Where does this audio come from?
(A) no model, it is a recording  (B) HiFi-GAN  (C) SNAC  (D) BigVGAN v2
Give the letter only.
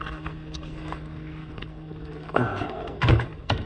C